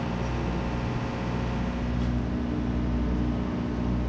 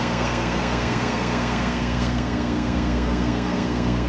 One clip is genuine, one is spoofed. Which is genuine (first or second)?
first